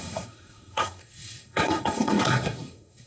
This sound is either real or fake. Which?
fake